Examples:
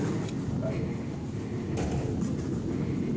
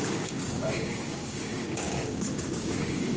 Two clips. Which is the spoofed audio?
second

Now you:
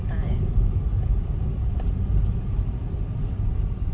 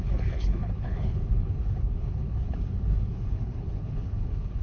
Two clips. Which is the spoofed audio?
second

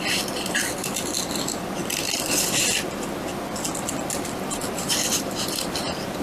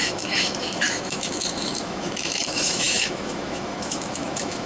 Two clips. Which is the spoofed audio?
second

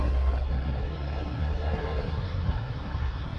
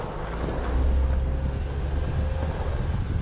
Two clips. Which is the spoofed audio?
first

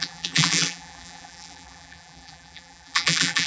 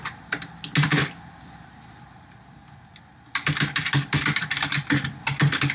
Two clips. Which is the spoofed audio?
first